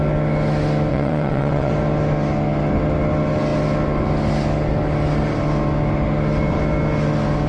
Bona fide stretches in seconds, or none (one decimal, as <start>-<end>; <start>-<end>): 0.0-0.9; 1.7-7.5